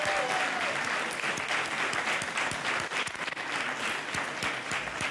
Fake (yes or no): no